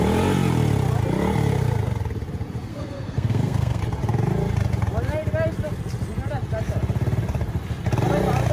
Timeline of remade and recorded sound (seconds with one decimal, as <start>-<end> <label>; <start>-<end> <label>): 0.0-2.7 recorded; 2.7-3.8 remade; 3.8-8.5 recorded